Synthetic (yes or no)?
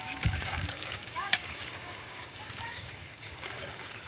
yes